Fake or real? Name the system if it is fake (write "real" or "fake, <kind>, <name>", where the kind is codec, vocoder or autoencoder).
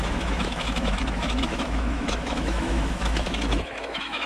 fake, autoencoder, DAC-VAE